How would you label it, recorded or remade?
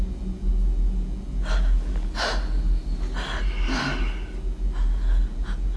recorded